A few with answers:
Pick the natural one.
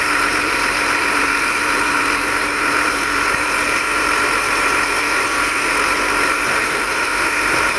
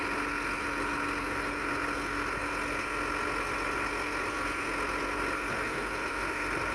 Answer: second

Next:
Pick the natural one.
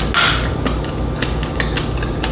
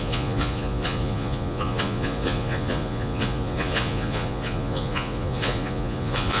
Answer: first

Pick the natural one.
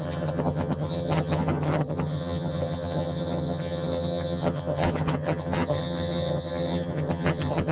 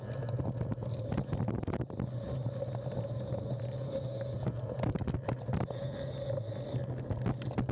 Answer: second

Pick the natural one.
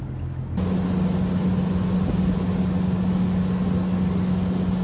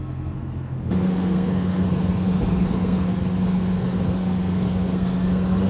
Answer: first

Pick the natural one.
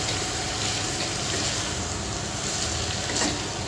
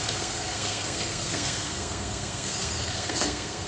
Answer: first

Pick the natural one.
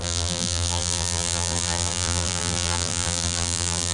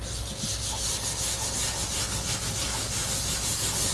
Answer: second